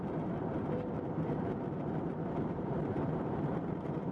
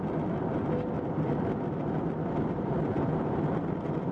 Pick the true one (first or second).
second